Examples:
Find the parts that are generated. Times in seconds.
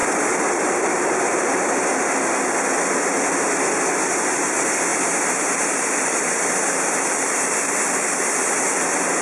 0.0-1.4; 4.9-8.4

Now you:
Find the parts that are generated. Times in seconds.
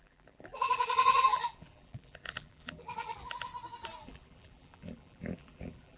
0.0-3.5; 4.0-6.0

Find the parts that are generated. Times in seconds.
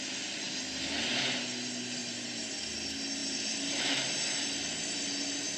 2.0-2.6; 3.2-4.4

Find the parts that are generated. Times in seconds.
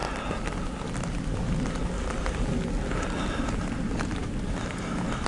3.2-5.3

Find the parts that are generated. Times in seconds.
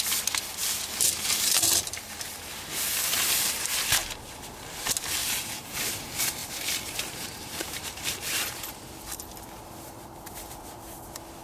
5.2-5.9; 6.4-8.8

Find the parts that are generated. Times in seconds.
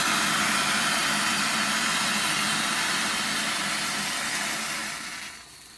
none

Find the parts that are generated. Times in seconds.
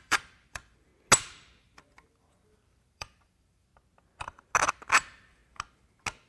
0.0-0.9; 1.6-3.7; 4.7-5.4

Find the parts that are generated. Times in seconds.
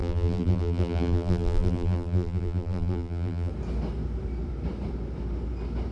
0.0-3.5